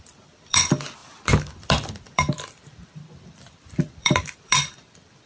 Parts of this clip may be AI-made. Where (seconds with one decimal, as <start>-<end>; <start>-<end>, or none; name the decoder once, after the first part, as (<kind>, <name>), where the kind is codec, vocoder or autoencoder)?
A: 0.0-5.3 (vocoder, BigVGAN v2)